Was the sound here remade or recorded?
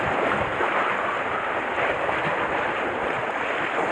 recorded